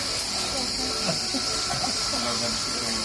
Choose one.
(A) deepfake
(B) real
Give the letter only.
B